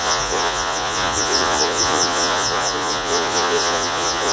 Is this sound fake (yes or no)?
yes